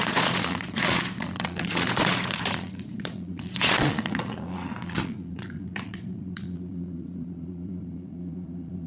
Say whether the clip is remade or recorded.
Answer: remade